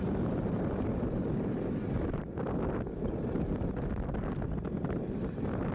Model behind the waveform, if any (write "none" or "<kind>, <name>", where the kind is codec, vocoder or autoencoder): none